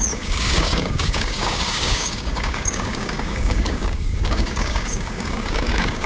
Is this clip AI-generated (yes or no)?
yes